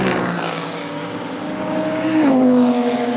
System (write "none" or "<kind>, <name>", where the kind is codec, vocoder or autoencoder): codec, DAC